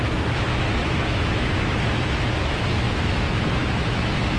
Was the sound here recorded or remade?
remade